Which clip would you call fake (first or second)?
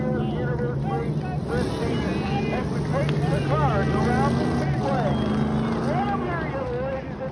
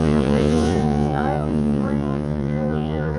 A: second